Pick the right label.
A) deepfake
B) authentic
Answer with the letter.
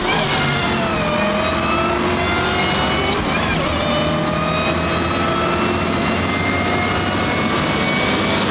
B